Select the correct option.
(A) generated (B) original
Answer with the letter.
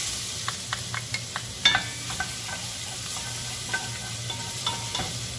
B